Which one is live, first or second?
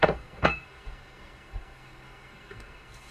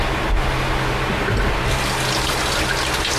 second